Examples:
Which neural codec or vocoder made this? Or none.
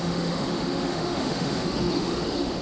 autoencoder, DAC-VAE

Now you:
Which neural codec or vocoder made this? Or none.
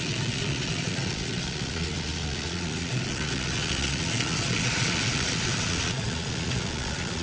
vocoder, Vocos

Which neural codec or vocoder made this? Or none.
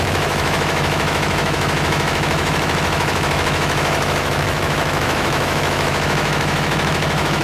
autoencoder, DAC-VAE